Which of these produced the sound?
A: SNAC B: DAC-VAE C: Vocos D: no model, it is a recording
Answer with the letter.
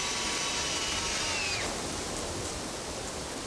D